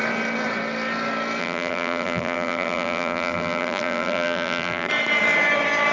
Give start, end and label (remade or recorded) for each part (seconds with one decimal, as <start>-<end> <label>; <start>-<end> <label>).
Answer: 0.0-1.4 recorded; 1.4-4.9 remade; 4.9-5.9 recorded